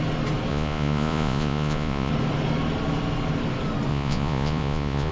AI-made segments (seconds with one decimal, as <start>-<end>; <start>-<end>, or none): 0.5-2.1; 3.9-5.1